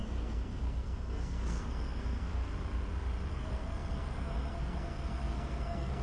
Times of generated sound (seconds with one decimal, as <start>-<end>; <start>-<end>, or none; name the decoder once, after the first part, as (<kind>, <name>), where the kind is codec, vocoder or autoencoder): 0.0-2.5 (codec, SNAC); 3.3-6.0